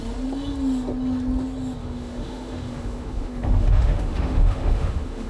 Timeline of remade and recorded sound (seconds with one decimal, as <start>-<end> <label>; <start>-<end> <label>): 0.0-1.8 recorded; 1.8-5.3 remade